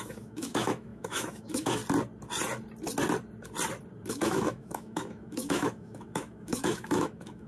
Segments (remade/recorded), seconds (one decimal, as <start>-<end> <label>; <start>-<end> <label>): 0.0-1.8 remade; 1.8-4.1 recorded; 4.1-7.5 remade